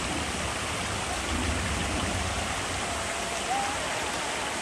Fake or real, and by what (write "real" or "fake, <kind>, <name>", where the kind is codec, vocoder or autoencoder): real